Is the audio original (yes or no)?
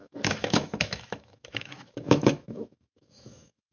no